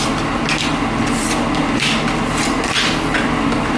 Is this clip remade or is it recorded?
recorded